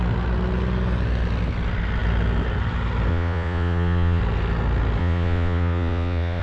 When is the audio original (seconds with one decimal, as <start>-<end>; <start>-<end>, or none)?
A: 0.0-3.1; 4.2-5.0